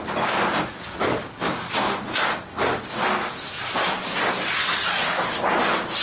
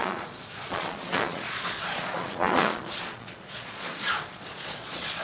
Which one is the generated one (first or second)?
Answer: second